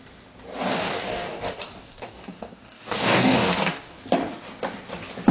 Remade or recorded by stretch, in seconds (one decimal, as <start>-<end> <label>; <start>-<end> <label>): 0.0-0.8 recorded; 0.8-4.0 remade; 4.0-5.3 recorded